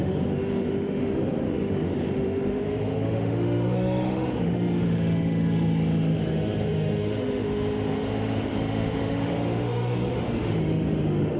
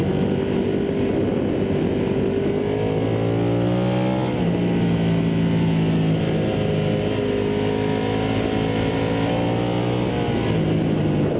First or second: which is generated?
first